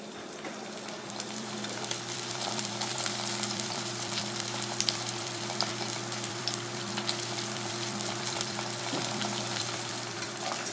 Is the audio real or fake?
fake